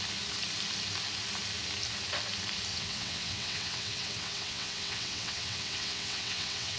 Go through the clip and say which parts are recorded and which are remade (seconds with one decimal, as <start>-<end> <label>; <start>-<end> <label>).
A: 0.0-2.7 recorded; 2.7-6.8 remade